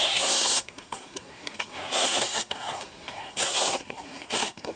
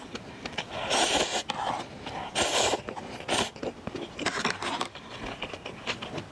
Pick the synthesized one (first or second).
first